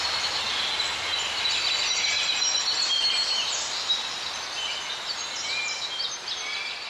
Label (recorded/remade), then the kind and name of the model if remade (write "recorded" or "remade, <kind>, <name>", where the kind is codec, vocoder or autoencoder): recorded